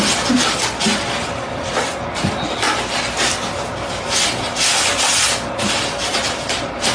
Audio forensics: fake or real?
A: real